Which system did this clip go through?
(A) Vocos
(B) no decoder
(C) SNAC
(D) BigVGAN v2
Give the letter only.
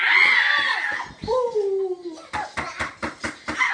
B